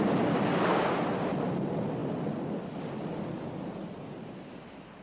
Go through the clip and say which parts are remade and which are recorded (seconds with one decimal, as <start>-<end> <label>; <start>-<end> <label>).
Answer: 0.0-5.0 recorded